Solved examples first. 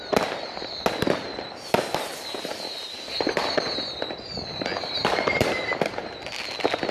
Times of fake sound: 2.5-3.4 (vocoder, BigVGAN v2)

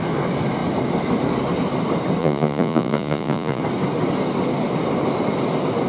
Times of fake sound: 2.2-3.6 (vocoder, Vocos)

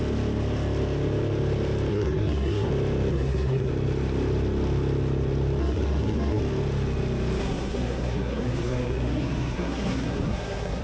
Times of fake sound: 1.9-2.7 (codec, SNAC); 3.1-3.7; 5.6-6.4; 7.4-10.8

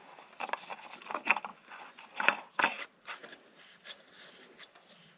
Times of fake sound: 1.5-2.4 (vocoder, Vocos)